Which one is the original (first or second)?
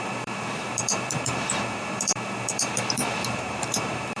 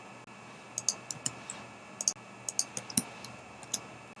second